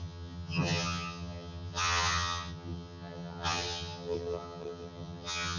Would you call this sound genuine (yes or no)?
no